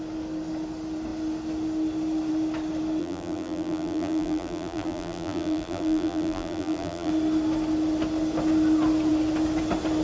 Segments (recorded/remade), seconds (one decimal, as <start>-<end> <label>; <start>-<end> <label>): 0.0-3.0 recorded; 3.0-7.1 remade; 7.1-10.0 recorded